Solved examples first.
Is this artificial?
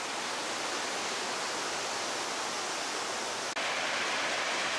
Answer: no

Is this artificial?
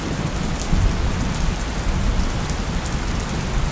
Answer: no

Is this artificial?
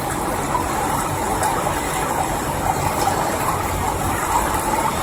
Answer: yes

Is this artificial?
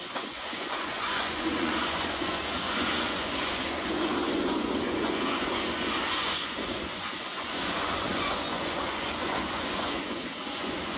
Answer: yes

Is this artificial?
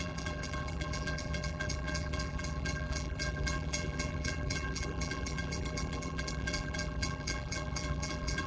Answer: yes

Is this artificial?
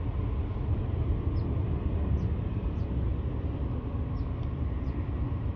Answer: no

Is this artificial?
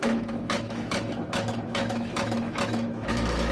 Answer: yes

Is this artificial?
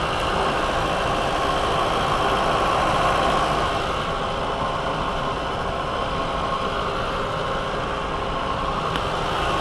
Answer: no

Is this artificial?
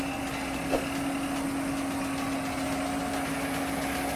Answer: no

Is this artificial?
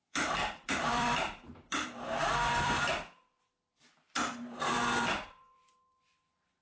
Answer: yes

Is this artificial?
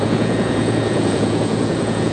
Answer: yes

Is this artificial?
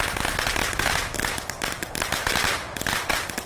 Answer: no